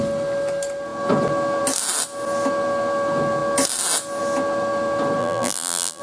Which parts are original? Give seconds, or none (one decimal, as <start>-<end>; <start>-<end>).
0.0-5.2